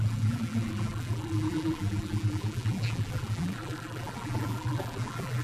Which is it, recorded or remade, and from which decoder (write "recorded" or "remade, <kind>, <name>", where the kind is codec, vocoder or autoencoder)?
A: remade, vocoder, BigVGAN v2